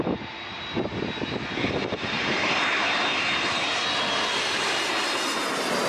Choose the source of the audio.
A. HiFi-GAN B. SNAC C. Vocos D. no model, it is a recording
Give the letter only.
D